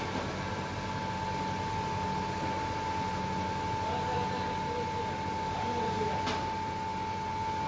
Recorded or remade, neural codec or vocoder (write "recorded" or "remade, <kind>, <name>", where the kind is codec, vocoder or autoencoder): recorded